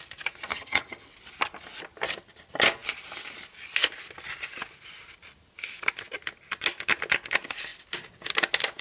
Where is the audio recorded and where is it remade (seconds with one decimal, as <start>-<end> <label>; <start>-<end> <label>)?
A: 0.0-0.5 recorded; 0.5-1.1 remade; 1.1-8.8 recorded